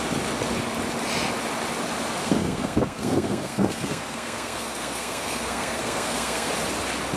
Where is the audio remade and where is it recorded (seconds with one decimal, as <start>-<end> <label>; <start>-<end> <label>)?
0.0-2.2 recorded; 2.2-6.5 remade; 6.5-7.2 recorded